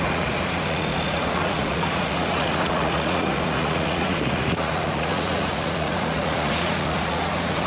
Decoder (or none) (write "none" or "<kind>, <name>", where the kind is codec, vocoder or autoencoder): vocoder, Vocos